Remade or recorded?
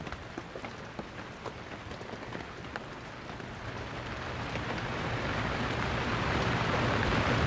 recorded